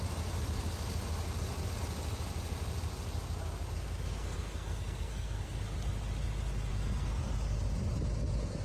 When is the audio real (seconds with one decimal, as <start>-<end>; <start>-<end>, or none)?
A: 0.0-4.1; 5.6-6.7; 7.3-8.6